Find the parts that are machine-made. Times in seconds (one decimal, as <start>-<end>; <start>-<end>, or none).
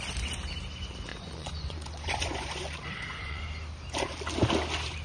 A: 1.1-3.4